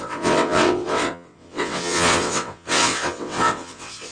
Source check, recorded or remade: remade